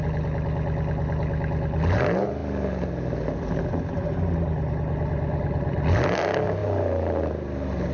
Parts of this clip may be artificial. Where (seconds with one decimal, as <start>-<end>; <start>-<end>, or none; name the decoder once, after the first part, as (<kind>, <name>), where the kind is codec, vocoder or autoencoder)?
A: 6.6-7.9 (vocoder, BigVGAN v2)